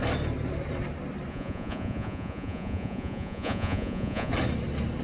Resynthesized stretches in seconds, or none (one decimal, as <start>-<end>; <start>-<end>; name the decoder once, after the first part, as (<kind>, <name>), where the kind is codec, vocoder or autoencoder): 1.3-4.3 (vocoder, Vocos)